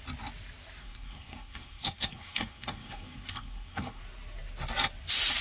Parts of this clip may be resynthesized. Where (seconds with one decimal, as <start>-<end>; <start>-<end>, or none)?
0.8-4.0